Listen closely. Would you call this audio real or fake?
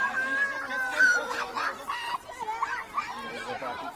real